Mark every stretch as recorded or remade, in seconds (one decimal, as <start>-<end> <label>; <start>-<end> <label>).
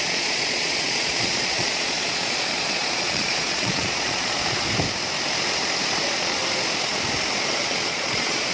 0.0-4.6 remade; 4.6-6.0 recorded; 6.0-6.4 remade; 6.4-7.5 recorded; 7.5-8.5 remade